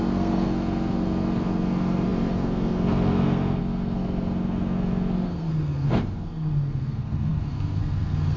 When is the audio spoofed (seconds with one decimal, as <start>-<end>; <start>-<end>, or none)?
0.0-8.4